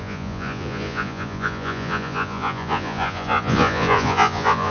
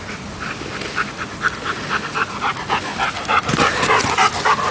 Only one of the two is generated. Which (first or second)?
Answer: first